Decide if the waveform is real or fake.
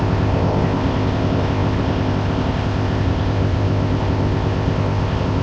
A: fake